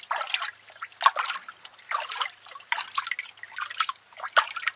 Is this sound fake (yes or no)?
no